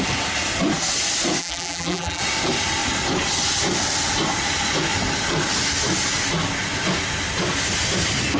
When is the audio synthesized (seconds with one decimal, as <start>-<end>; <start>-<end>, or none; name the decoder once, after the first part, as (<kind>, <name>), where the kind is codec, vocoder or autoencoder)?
1.4-2.2 (vocoder, BigVGAN v2)